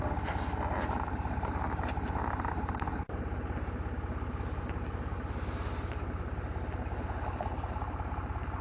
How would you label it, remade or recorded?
recorded